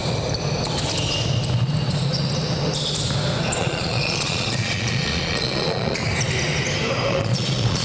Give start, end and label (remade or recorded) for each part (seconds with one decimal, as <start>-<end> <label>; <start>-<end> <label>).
0.0-3.6 recorded; 3.6-6.0 remade; 6.0-7.1 recorded; 7.1-7.8 remade